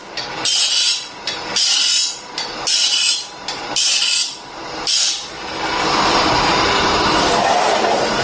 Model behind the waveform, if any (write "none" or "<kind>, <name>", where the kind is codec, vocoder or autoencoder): vocoder, BigVGAN v2